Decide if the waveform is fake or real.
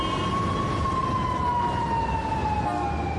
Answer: real